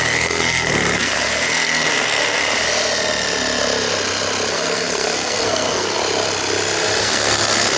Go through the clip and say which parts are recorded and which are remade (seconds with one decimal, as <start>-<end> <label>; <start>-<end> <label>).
0.0-2.4 remade; 2.4-4.5 recorded; 4.5-6.0 remade; 6.0-7.0 recorded; 7.0-7.8 remade